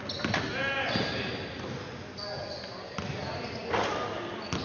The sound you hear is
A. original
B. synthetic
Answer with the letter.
A